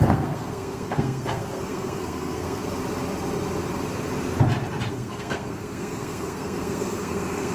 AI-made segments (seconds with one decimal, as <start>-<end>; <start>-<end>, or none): 0.0-2.6; 4.9-7.5